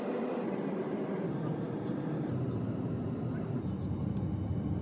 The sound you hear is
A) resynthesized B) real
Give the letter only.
B